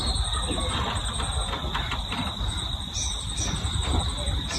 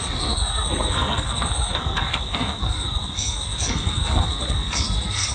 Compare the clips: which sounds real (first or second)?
first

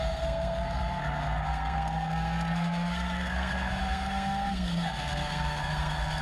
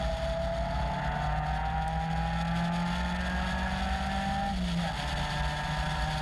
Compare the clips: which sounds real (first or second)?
second